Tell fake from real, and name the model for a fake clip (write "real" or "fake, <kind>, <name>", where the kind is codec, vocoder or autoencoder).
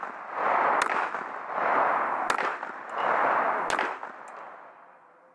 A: real